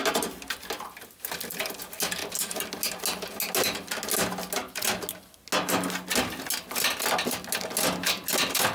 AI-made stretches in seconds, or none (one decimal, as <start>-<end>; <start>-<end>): none